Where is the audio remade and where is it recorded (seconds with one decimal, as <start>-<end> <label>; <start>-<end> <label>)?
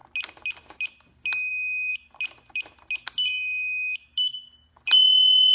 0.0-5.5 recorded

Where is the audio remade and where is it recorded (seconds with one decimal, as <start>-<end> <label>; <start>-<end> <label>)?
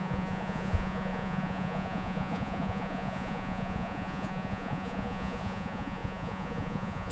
0.0-7.1 remade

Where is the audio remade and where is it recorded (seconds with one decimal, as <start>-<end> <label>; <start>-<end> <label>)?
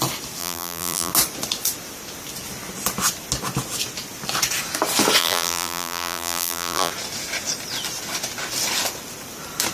0.0-0.4 recorded; 0.4-1.1 remade; 1.1-5.2 recorded; 5.2-6.9 remade; 6.9-9.7 recorded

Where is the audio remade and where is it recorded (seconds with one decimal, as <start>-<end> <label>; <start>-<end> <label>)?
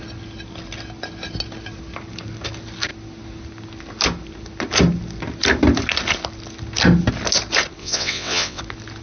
0.0-7.8 recorded; 7.8-8.6 remade; 8.6-9.0 recorded